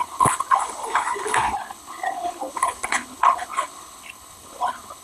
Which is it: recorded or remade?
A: remade